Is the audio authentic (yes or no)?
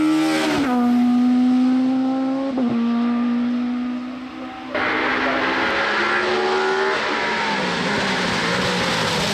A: yes